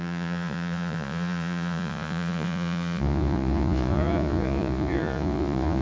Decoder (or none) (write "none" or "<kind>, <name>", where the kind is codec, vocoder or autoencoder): vocoder, Vocos